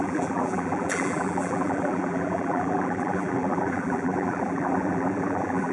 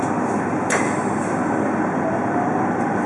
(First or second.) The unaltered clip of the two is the second